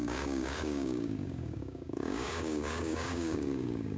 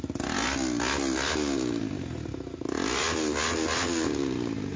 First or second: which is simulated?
first